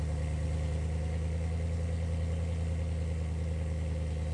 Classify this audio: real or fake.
real